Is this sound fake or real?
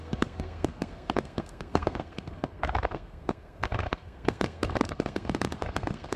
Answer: fake